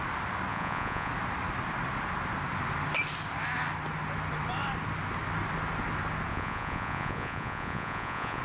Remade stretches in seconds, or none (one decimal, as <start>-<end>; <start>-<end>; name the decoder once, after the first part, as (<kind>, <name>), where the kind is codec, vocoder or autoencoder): 0.5-1.1 (vocoder, Vocos); 6.3-8.4